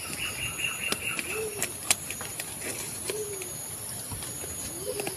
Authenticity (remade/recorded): recorded